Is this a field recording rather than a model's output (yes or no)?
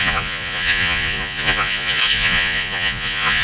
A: no